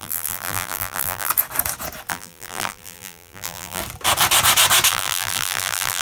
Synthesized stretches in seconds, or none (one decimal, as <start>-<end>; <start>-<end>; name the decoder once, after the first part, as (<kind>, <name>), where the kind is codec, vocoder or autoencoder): 0.0-1.3 (vocoder, BigVGAN v2); 2.1-3.8; 4.9-6.0